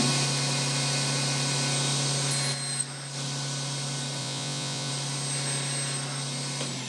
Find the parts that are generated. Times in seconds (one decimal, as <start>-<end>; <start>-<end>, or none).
4.2-4.9

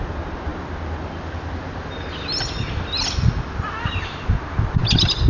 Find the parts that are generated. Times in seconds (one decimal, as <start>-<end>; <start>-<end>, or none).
none

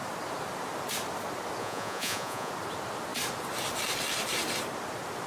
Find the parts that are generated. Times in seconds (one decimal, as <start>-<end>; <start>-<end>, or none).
1.6-2.5

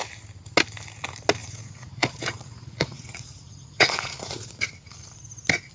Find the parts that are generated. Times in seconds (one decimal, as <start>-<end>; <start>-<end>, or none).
1.4-4.7

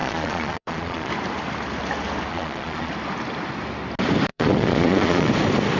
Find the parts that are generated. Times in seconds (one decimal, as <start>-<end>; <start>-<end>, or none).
0.0-1.1; 2.3-2.9; 4.3-5.3